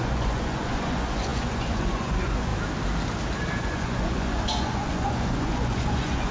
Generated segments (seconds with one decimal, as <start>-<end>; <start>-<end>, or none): 0.0-2.5; 3.6-6.3